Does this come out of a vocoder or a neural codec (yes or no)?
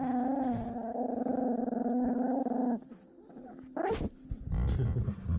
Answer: no